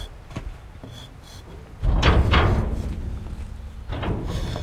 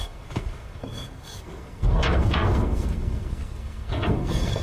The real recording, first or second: first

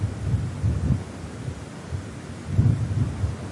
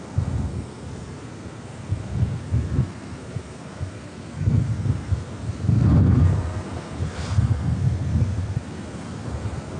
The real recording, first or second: first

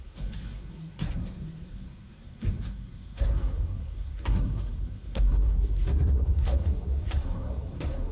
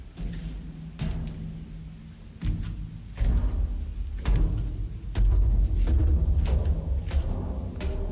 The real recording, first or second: second